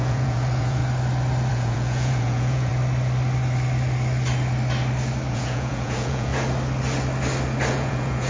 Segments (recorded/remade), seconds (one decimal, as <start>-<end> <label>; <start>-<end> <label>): 0.0-0.8 remade; 0.8-1.5 recorded; 1.5-2.7 remade; 2.7-5.3 recorded; 5.3-6.3 remade; 6.3-7.7 recorded; 7.7-8.3 remade